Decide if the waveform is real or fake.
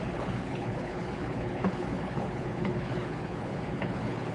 fake